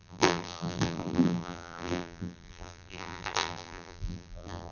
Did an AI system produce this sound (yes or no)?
yes